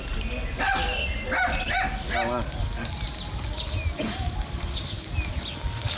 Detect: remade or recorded recorded